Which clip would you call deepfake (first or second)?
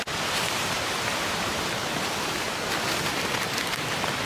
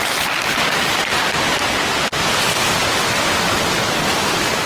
first